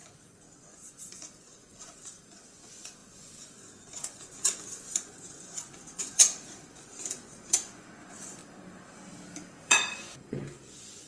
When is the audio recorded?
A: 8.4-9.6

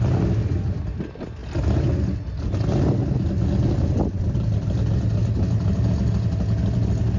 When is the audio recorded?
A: 0.0-7.2